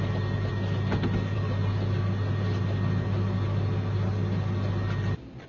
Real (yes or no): yes